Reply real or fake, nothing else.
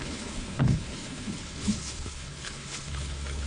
fake